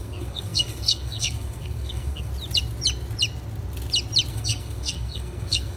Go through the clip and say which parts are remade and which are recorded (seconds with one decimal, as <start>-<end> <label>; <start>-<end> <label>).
0.0-2.3 remade; 2.3-4.3 recorded; 4.3-5.8 remade